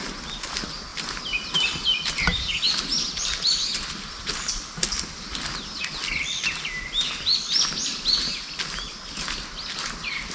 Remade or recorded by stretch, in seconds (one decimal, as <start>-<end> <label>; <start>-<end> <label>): 0.0-0.9 recorded; 0.9-5.8 remade; 5.8-10.3 recorded